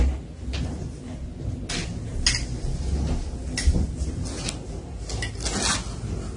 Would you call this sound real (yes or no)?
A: yes